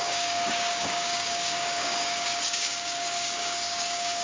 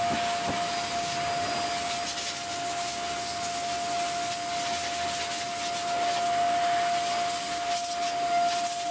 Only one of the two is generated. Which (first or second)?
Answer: first